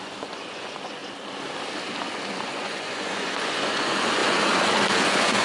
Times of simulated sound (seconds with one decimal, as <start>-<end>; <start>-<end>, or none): 0.0-1.0; 2.1-5.4